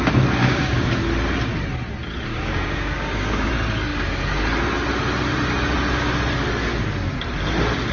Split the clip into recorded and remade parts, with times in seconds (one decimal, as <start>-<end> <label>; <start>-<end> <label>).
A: 0.0-0.4 recorded; 0.4-0.9 remade; 0.9-2.3 recorded; 2.3-3.5 remade; 3.5-7.9 recorded